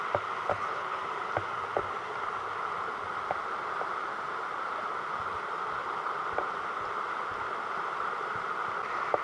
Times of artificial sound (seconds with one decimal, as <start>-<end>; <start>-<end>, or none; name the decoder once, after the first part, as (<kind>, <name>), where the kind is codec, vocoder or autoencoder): 0.5-1.0 (codec, HILCodec)